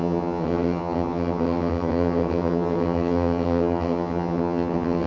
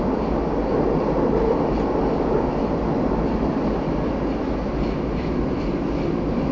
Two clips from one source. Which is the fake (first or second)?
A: first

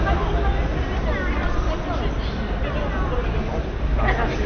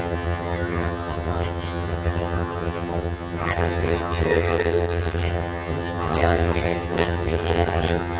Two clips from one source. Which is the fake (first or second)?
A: second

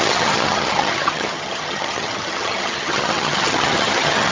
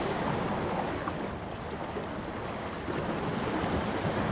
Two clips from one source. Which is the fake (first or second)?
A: first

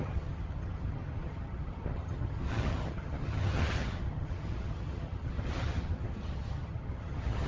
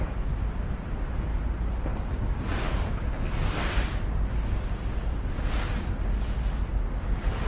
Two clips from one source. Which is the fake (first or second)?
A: first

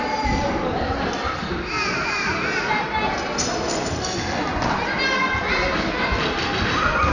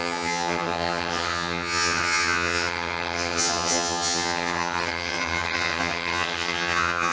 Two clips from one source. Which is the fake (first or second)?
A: second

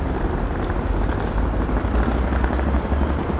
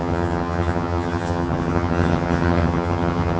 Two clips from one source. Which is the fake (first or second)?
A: second